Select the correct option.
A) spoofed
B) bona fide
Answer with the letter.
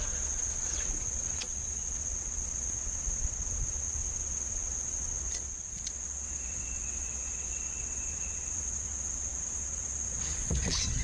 A